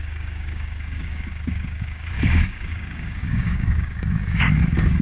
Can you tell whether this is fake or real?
fake